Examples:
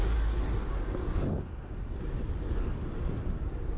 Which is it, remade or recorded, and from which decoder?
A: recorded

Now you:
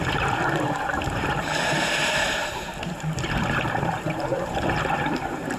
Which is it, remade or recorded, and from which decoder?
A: remade, vocoder, BigVGAN v2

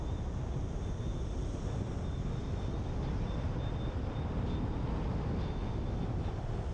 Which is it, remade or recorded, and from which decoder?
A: recorded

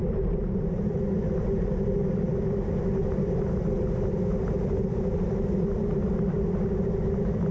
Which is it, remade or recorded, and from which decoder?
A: recorded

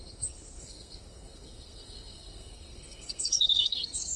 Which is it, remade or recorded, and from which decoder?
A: remade, codec, SNAC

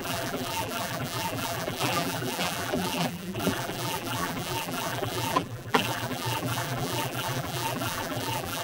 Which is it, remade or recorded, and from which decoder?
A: remade, vocoder, BigVGAN v2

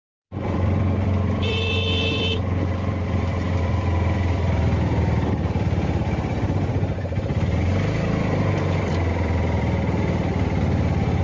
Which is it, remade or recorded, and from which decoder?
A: remade, vocoder, BigVGAN v2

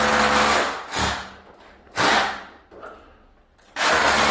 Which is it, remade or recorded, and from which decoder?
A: recorded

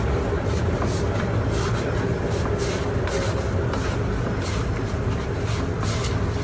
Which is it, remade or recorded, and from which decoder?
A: recorded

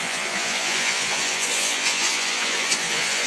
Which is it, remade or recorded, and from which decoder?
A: remade, vocoder, Vocos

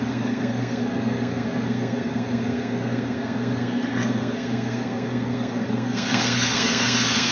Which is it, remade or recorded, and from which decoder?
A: remade, codec, SNAC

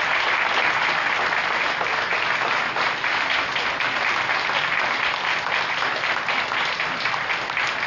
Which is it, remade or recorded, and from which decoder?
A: recorded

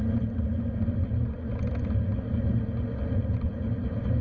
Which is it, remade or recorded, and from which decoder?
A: recorded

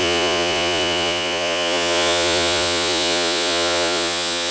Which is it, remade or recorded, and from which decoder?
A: remade, vocoder, Vocos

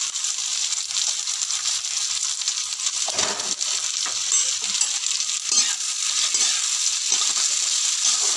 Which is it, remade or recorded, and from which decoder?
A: recorded